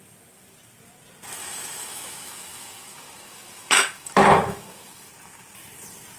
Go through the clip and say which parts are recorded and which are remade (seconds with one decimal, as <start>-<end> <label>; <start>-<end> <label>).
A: 0.0-1.4 recorded; 1.4-5.1 remade; 5.1-6.2 recorded